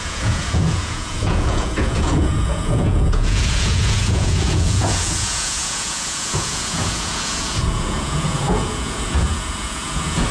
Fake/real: fake